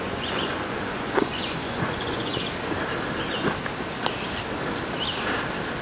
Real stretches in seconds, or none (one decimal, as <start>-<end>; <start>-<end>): 2.3-5.8